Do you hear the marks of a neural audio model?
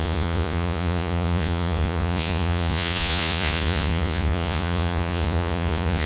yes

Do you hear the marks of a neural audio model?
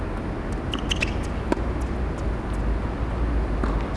no